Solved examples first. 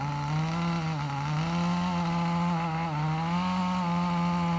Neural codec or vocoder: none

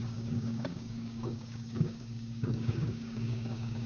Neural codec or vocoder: codec, DAC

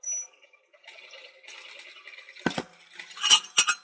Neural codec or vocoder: none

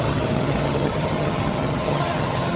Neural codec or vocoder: vocoder, HiFi-GAN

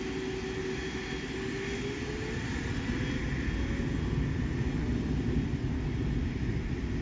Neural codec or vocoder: none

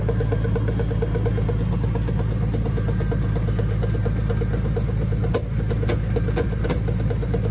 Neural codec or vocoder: none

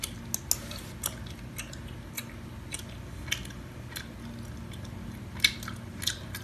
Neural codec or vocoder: none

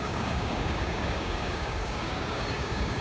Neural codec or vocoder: codec, DAC